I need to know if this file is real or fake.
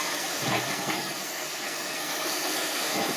fake